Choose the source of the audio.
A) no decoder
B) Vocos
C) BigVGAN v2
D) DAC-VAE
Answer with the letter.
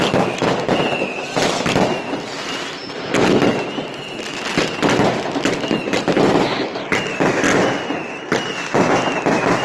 A